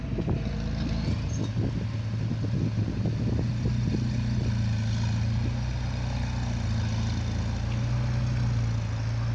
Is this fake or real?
real